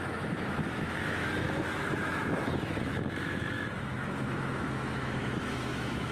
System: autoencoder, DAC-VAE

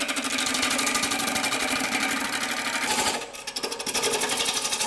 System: none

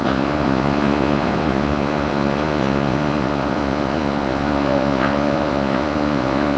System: vocoder, Vocos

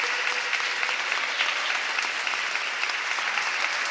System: none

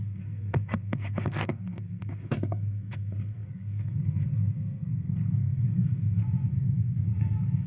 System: codec, SNAC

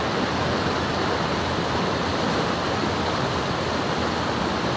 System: none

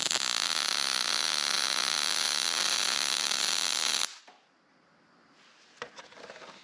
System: vocoder, BigVGAN v2